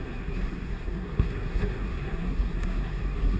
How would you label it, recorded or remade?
remade